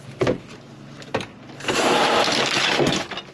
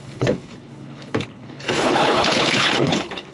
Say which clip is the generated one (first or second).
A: second